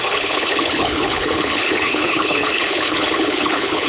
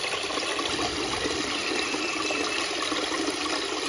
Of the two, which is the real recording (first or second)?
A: second